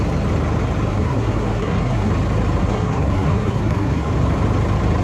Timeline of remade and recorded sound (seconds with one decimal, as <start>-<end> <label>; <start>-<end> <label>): 0.0-0.9 recorded; 0.9-2.1 remade; 2.1-2.6 recorded; 2.6-4.1 remade; 4.1-5.0 recorded